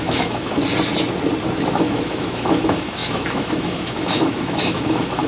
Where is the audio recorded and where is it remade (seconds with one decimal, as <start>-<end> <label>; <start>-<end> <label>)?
0.0-0.6 remade; 0.6-1.7 recorded; 1.7-5.3 remade